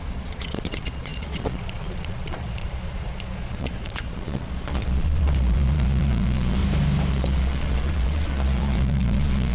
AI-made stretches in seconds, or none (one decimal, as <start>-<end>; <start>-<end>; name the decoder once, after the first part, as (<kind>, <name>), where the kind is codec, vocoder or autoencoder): 0.0-6.6 (vocoder, Vocos); 7.1-9.5